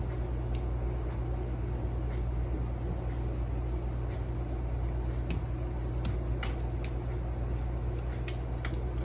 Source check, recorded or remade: recorded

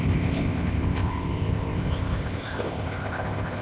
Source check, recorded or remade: remade